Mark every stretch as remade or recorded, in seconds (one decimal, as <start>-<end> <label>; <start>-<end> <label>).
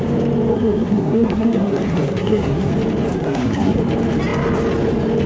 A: 0.0-0.5 recorded; 0.5-2.7 remade; 2.7-3.1 recorded; 3.1-3.8 remade; 3.8-5.3 recorded